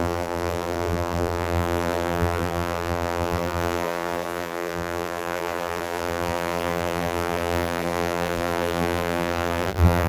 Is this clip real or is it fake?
fake